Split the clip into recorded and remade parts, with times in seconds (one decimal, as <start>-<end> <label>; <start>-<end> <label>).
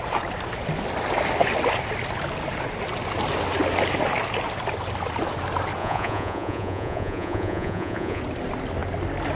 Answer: 0.0-5.8 recorded; 5.8-8.2 remade; 8.2-9.4 recorded